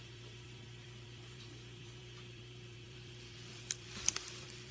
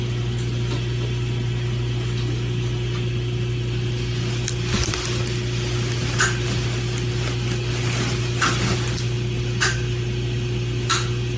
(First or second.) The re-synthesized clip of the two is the first